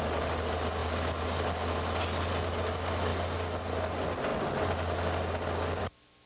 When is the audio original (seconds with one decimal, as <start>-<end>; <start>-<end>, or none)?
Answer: 0.0-6.3